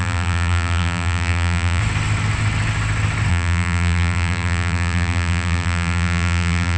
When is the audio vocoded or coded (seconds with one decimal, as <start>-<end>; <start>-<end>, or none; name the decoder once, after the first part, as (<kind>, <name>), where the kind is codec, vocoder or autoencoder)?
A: 0.0-1.8 (vocoder, BigVGAN v2); 3.3-6.8